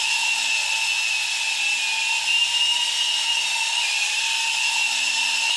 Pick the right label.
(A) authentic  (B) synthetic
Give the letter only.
A